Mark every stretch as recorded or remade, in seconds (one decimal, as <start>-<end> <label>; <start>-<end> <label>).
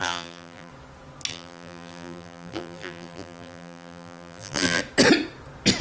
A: 0.0-0.7 remade; 0.7-1.3 recorded; 1.3-4.8 remade; 4.8-5.8 recorded